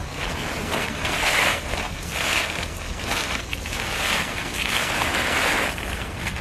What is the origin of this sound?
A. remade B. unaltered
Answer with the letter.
A